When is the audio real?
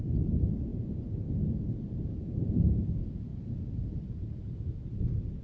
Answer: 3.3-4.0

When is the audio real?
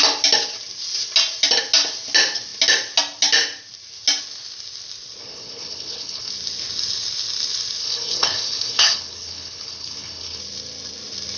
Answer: 0.0-5.2; 6.3-7.8; 10.4-11.4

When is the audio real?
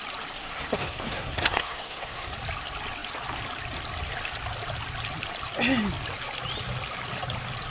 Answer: 0.0-0.4; 2.3-7.7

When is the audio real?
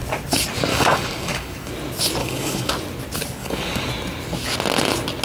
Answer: 0.0-0.7; 1.7-2.2; 2.7-3.4; 3.9-5.2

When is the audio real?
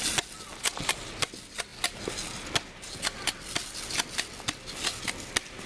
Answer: 0.0-5.7